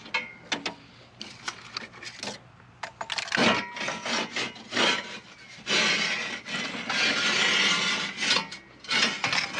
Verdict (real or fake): real